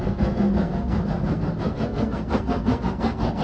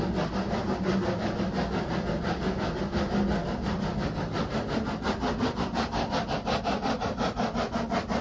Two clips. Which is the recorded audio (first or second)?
second